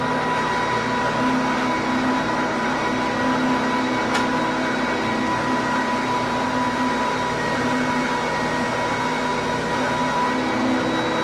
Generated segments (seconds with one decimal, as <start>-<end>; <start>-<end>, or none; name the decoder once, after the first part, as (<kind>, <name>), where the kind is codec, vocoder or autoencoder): none